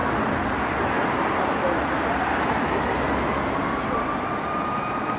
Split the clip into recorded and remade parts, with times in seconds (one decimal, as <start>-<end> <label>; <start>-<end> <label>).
0.0-5.2 recorded